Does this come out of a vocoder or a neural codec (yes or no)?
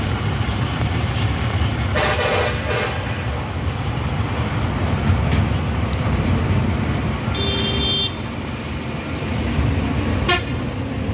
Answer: no